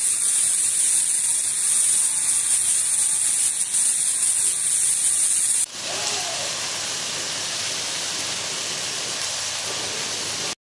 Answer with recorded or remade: recorded